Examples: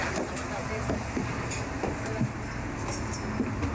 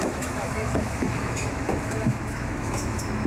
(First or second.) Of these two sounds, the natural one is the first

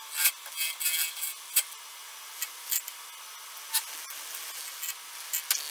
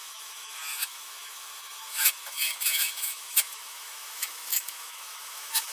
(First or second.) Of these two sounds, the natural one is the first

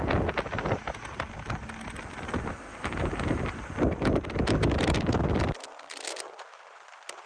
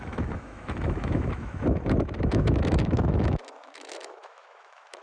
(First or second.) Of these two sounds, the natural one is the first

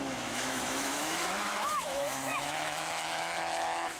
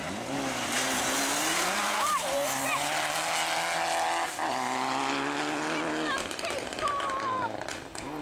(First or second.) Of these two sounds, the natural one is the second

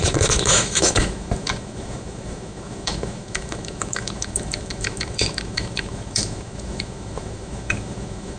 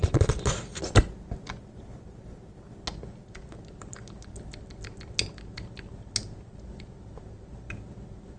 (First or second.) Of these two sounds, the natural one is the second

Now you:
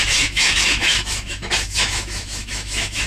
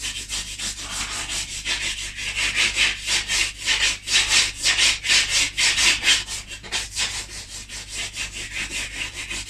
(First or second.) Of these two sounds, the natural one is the second